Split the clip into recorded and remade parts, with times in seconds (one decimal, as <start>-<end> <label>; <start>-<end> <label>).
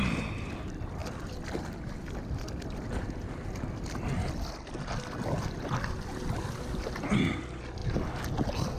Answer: 0.0-8.8 recorded